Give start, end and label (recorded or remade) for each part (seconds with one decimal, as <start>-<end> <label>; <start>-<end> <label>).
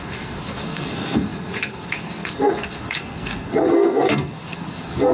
0.0-5.1 remade